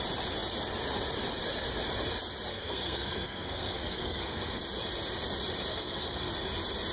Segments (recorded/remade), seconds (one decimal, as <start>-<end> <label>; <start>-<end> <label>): 0.0-2.5 recorded; 2.5-4.6 remade; 4.6-5.7 recorded; 5.7-6.3 remade; 6.3-6.9 recorded